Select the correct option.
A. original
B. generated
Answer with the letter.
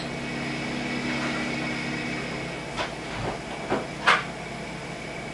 A